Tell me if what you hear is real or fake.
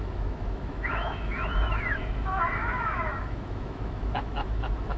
fake